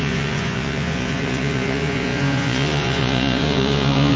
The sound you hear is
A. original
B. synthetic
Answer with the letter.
B